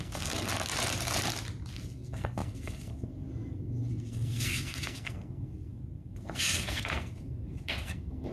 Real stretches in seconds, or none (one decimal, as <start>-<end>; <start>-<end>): 0.5-1.7